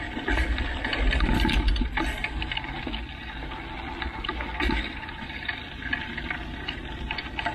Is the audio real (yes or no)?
yes